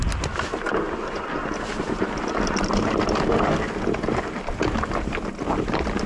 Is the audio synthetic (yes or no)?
no